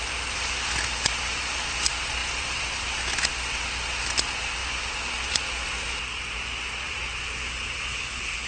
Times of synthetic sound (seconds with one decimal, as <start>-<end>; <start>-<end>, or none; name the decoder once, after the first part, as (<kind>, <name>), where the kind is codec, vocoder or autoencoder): 7.9-8.5 (codec, HILCodec)